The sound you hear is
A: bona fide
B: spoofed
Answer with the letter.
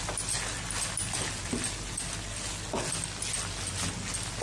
A